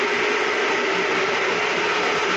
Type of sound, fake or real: real